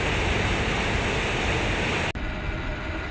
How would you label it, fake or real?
real